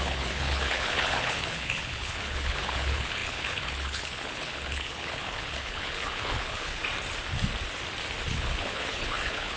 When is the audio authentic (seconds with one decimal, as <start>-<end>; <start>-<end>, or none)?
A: 6.8-8.3